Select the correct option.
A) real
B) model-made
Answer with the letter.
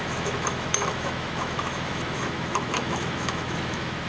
B